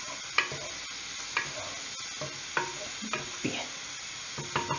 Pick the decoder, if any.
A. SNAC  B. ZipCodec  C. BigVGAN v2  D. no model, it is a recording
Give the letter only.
D